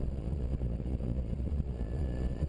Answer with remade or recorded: remade